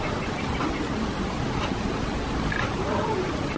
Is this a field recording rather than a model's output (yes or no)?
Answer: yes